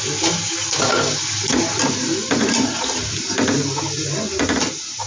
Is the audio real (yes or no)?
yes